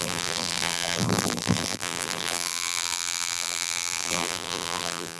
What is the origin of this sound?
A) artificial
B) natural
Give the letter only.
A